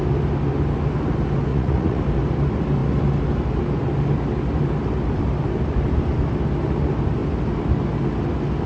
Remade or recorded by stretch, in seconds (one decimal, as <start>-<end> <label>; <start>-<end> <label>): 0.0-1.5 recorded; 1.5-2.0 remade; 2.0-8.7 recorded